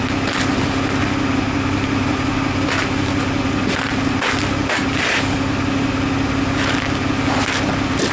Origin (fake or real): real